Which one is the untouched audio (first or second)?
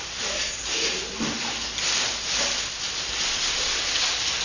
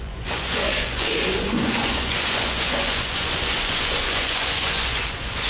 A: first